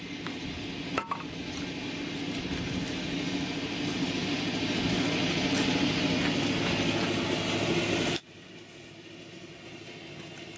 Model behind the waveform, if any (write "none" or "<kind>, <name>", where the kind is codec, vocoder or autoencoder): none